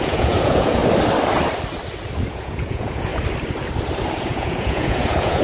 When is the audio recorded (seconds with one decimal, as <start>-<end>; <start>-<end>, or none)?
0.8-2.3; 3.1-4.2